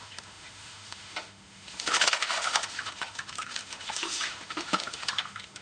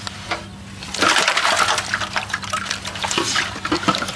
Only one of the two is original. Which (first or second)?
second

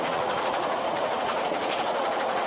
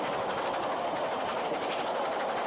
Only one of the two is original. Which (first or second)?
second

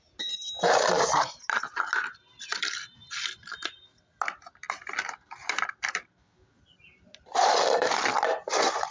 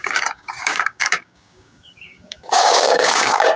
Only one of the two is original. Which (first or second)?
first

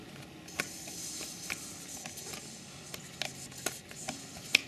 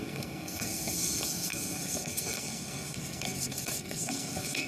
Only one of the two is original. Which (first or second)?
first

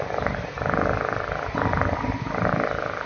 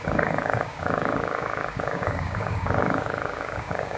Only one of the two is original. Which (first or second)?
first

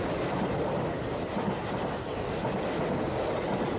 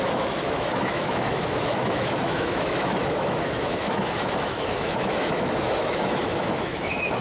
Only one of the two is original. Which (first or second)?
first